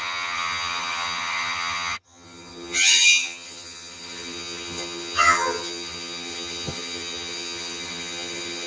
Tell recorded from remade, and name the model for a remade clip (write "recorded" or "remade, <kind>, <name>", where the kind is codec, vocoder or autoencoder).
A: remade, vocoder, HiFi-GAN